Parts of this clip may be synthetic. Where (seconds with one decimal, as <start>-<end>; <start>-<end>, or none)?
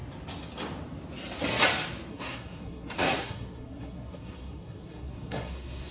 2.1-5.9